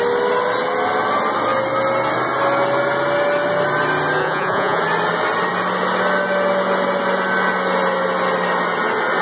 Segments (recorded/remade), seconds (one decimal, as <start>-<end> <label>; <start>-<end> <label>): 0.0-4.2 recorded; 4.2-4.8 remade; 4.8-9.2 recorded